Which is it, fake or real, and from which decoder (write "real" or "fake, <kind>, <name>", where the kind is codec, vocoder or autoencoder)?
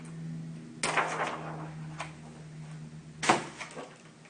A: real